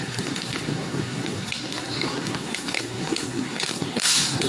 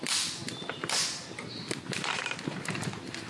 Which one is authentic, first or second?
second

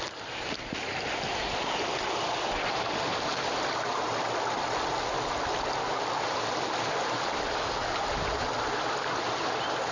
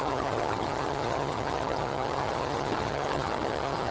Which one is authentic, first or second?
first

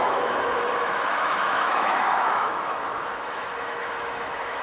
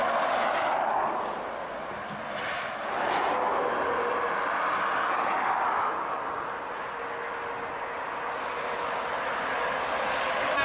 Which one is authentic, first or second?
second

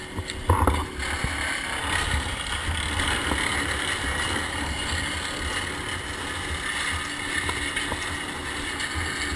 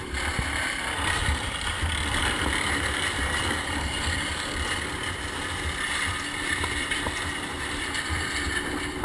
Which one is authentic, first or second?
first